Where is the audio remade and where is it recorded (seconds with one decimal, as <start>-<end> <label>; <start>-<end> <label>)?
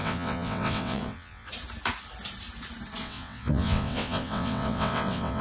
0.0-1.5 remade; 1.5-3.0 recorded; 3.0-5.4 remade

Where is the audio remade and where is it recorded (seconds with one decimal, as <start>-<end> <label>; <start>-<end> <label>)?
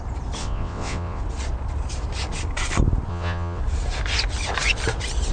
0.0-0.4 recorded; 0.4-1.2 remade; 1.2-3.1 recorded; 3.1-3.6 remade; 3.6-5.3 recorded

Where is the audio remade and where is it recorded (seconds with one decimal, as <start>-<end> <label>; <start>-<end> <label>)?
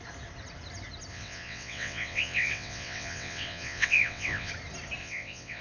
0.0-1.1 recorded; 1.1-4.5 remade; 4.5-5.0 recorded; 5.0-5.6 remade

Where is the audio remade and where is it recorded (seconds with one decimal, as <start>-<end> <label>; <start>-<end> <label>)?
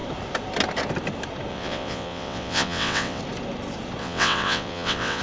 0.0-1.5 recorded; 1.5-3.2 remade; 3.2-4.0 recorded; 4.0-5.2 remade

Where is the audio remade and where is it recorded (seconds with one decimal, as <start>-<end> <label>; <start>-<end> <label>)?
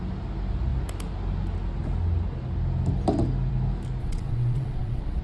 0.0-4.0 recorded; 4.0-5.2 remade